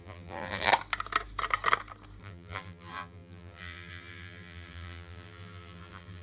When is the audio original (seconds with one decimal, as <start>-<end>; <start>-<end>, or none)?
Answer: 0.7-2.2